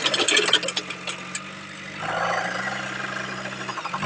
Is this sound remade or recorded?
recorded